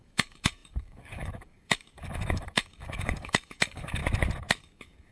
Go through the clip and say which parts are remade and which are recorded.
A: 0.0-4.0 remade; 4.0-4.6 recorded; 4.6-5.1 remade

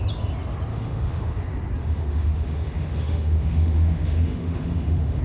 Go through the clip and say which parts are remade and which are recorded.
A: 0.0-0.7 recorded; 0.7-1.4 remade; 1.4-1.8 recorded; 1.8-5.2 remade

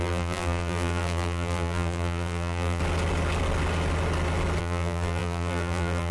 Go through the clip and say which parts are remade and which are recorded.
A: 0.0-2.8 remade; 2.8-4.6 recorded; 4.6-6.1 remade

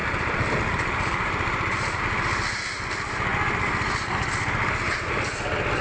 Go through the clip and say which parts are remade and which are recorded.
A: 0.0-2.0 remade; 2.0-5.8 recorded

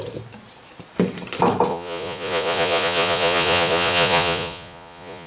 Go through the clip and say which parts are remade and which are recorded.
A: 0.0-1.7 recorded; 1.7-5.3 remade